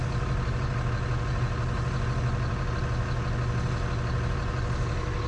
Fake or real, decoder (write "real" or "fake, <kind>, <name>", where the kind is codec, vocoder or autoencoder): real